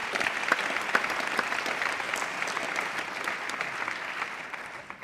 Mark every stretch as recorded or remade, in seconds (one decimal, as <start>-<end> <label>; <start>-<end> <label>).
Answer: 0.0-5.0 recorded